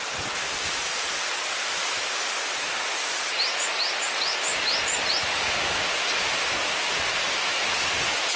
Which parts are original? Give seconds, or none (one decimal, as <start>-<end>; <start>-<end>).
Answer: 0.0-8.4